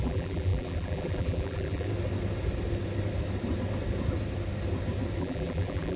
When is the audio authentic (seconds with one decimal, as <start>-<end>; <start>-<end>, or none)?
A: 1.9-5.2